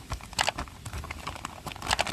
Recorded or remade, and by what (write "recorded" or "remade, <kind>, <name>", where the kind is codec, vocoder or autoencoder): recorded